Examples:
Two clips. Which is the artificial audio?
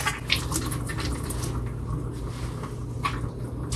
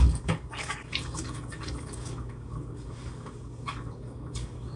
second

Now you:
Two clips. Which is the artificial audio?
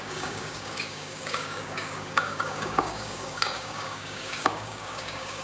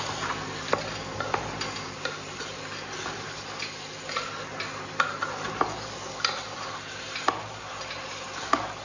first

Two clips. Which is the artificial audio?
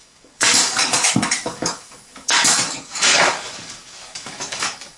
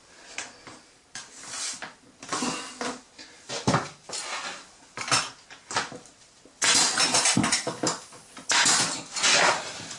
first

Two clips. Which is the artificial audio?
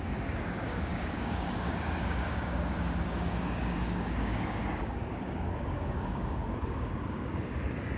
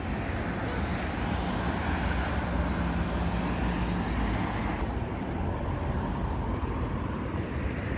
first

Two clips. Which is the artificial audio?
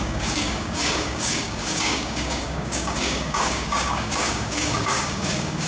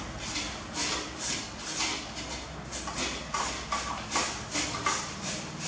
first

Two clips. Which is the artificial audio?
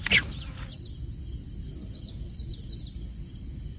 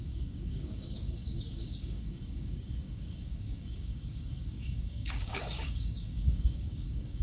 second